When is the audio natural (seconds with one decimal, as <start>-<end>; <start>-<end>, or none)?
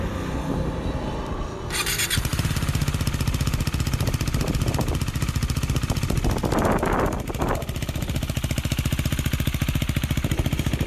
0.0-10.9